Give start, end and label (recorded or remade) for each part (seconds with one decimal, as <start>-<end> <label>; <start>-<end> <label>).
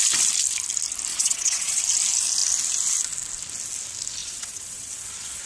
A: 0.0-1.1 recorded; 1.1-1.8 remade; 1.8-4.2 recorded; 4.2-5.5 remade